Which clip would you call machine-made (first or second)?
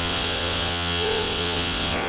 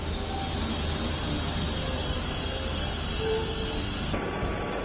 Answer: first